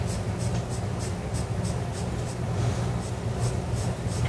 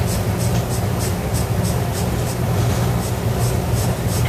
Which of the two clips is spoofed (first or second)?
second